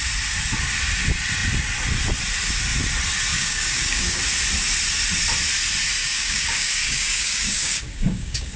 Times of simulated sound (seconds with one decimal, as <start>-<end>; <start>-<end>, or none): 3.3-4.2; 6.0-8.6